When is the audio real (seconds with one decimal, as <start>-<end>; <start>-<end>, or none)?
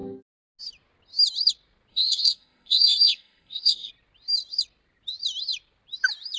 0.0-1.9; 3.9-6.4